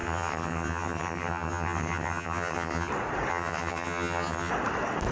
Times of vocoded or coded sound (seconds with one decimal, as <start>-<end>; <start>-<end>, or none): 0.0-2.9; 3.3-4.5